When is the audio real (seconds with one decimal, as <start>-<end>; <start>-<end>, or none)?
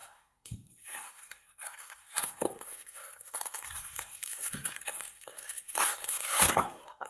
none